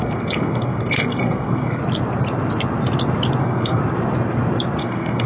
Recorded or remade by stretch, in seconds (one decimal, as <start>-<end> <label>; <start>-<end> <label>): 0.0-1.8 remade; 1.8-3.4 recorded; 3.4-3.8 remade; 3.8-4.8 recorded; 4.8-5.3 remade